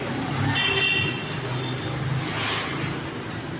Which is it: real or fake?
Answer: real